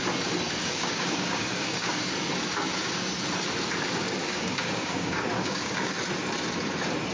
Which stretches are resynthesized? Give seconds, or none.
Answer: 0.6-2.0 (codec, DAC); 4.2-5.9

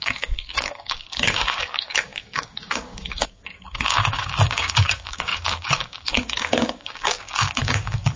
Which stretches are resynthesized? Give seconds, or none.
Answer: 0.0-8.2 (codec, DAC)

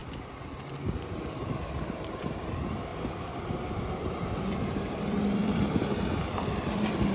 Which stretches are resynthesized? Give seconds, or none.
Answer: 2.9-7.1 (vocoder, BigVGAN v2)

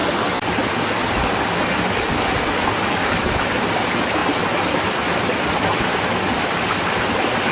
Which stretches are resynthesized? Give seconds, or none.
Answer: none

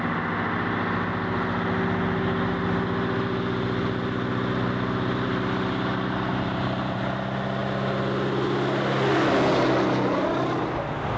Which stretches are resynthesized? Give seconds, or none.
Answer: 6.3-7.0 (vocoder, BigVGAN v2)

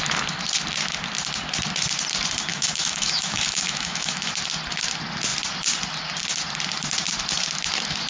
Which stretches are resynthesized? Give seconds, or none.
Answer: 2.5-4.3 (autoencoder, DAC-VAE)